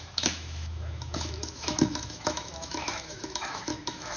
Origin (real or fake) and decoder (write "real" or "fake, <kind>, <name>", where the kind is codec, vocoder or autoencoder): fake, autoencoder, DAC-VAE